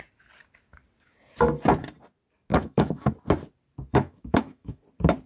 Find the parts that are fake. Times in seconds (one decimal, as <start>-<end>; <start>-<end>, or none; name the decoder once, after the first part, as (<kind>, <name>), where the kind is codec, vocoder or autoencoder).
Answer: 2.5-3.1 (autoencoder, DAC-VAE); 3.9-4.8